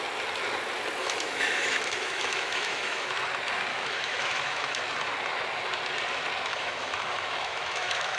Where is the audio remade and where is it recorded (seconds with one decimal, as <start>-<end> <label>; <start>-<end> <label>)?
0.0-1.0 recorded; 1.0-3.1 remade; 3.1-3.7 recorded; 3.7-4.8 remade; 4.8-6.5 recorded; 6.5-8.2 remade